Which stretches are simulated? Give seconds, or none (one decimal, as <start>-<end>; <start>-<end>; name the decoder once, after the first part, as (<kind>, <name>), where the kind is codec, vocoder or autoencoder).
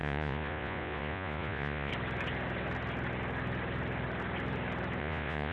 0.0-1.9 (vocoder, Vocos); 5.0-5.5